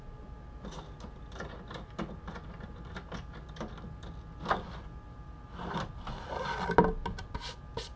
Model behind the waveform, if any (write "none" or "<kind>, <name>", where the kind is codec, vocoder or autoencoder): none